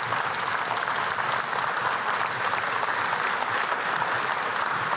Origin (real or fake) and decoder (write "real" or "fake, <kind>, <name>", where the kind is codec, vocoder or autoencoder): real